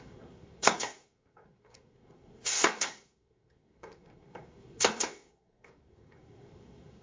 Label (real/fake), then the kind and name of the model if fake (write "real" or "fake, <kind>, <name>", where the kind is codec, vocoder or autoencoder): fake, codec, SNAC